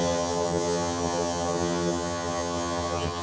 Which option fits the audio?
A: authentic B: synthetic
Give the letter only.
B